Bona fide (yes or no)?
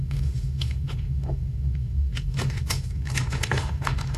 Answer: no